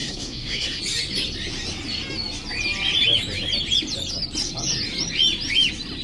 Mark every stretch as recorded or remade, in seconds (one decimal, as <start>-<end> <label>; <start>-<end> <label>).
0.0-0.8 remade; 0.8-6.0 recorded